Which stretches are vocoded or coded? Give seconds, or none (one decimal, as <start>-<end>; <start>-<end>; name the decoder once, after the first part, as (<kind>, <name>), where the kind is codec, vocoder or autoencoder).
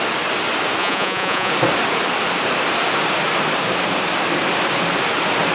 0.8-1.5 (vocoder, Vocos)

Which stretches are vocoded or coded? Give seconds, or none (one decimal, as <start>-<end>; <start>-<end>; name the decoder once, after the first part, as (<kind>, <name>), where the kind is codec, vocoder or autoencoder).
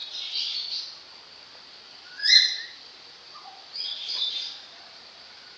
2.9-5.6 (vocoder, Vocos)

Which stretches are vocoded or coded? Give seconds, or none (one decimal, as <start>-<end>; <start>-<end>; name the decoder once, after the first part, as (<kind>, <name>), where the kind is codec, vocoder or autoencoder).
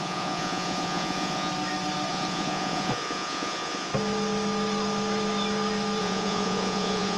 0.0-1.5 (vocoder, Vocos); 2.1-3.9; 6.0-7.2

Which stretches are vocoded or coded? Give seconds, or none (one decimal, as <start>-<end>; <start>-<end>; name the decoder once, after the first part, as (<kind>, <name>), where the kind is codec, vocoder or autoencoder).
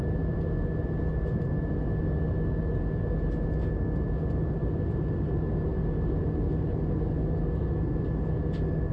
none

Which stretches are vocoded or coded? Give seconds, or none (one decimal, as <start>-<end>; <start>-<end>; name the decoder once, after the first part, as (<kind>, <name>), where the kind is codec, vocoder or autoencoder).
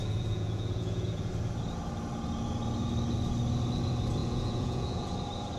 0.0-1.3 (vocoder, Vocos); 4.2-5.1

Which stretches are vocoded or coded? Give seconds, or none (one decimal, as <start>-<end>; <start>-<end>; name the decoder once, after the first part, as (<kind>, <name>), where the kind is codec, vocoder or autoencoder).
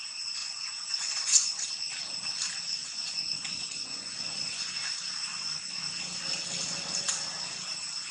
0.4-1.7 (vocoder, Vocos); 2.8-4.7; 5.3-5.8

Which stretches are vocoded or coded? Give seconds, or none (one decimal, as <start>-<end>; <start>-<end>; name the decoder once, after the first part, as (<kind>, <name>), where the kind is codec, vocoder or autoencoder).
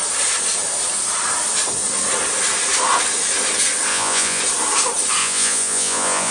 3.9-4.4 (vocoder, Vocos); 5.2-6.3